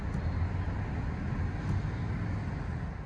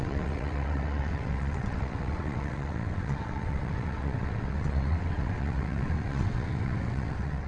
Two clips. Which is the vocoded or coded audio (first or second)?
second